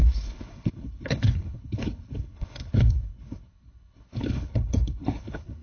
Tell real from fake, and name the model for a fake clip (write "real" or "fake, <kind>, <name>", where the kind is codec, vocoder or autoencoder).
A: fake, codec, HILCodec